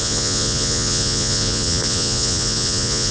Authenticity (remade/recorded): remade